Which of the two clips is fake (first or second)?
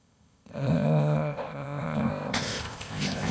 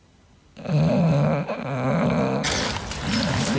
first